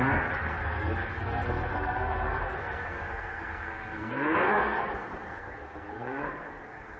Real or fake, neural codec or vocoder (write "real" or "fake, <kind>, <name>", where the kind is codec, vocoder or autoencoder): fake, codec, SNAC